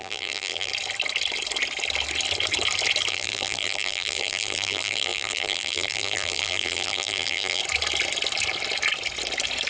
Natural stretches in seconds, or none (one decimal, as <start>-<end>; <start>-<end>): 0.7-3.1; 7.6-9.7